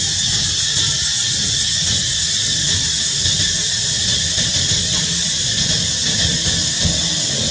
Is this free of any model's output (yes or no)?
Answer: yes